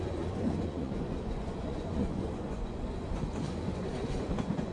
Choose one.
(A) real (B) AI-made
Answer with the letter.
B